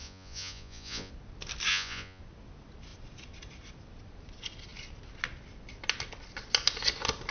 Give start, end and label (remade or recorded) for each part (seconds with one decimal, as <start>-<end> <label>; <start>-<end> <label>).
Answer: 0.0-1.1 remade; 1.1-1.7 recorded; 1.7-2.2 remade; 2.2-7.3 recorded